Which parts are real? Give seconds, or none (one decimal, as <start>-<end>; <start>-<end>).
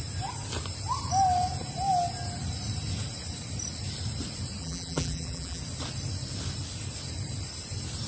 0.0-4.6; 5.6-8.1